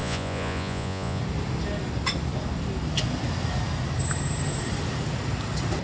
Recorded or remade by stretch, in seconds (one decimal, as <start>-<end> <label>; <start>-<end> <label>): 0.0-1.2 remade; 1.2-5.8 recorded